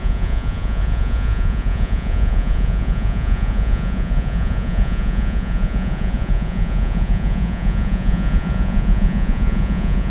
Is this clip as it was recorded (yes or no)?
no